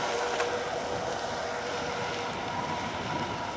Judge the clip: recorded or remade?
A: recorded